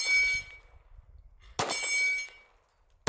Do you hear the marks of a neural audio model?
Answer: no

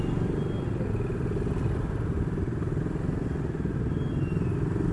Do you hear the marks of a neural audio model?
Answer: no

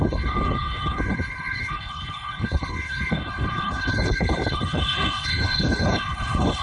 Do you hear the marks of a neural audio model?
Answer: yes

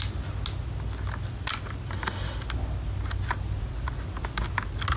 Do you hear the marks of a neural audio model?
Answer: no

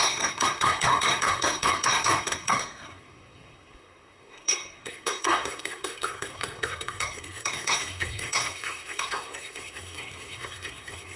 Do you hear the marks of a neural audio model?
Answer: yes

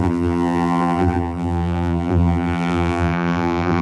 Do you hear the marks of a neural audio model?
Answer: yes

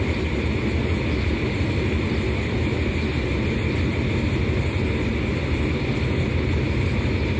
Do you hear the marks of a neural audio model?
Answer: no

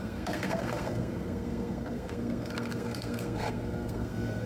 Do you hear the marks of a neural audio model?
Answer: yes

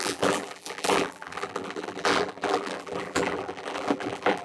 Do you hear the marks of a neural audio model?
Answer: yes